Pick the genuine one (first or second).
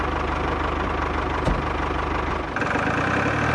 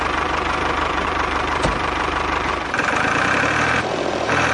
first